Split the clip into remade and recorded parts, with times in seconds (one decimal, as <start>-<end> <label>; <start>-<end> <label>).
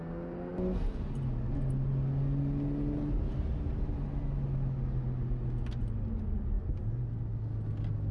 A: 0.0-8.1 recorded